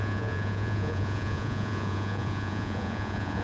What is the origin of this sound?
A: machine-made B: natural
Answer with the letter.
A